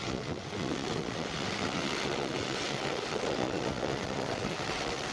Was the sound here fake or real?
fake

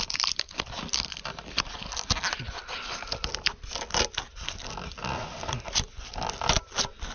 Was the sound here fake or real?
real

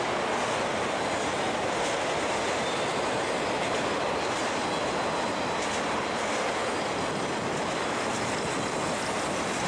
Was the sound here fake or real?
real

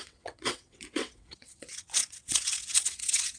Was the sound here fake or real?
fake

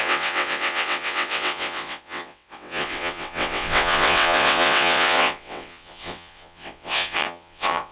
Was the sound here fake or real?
fake